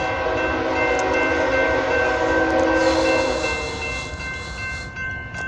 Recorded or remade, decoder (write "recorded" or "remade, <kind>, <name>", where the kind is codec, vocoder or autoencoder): recorded